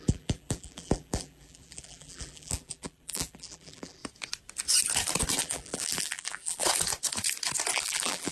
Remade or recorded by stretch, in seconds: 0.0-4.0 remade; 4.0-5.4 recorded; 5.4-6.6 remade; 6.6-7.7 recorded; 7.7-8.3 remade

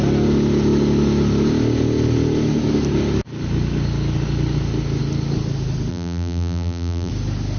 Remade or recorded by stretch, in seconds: 0.0-5.9 recorded; 5.9-7.1 remade; 7.1-7.6 recorded